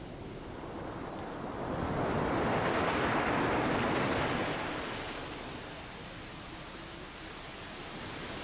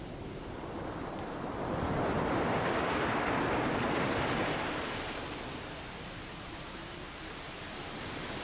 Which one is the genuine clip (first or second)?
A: first